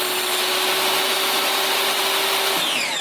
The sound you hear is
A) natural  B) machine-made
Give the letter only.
A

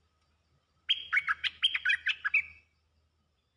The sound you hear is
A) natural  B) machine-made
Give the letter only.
A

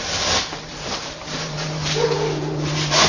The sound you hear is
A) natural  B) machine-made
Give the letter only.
B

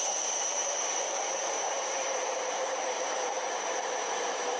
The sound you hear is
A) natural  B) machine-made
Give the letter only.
B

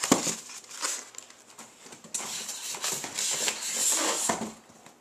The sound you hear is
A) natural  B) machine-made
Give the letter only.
A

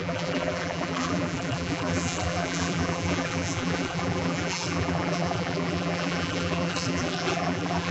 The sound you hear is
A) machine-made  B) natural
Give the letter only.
A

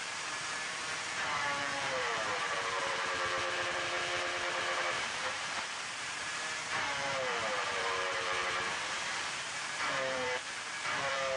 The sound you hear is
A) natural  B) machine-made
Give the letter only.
B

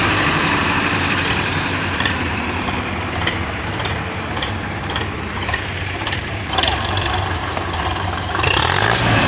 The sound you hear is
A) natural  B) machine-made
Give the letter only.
B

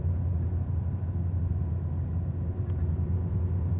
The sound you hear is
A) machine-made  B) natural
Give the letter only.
A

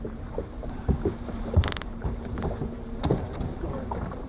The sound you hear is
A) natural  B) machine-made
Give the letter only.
B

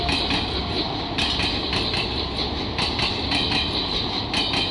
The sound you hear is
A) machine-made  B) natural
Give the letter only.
B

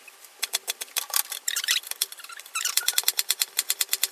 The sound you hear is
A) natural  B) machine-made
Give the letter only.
B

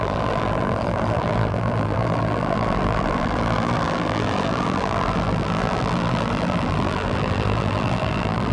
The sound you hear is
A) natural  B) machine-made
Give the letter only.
B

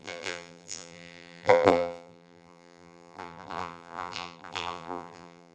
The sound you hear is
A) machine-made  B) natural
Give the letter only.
A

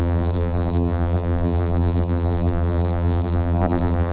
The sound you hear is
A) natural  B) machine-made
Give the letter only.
B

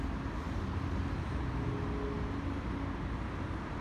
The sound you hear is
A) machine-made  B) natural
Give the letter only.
B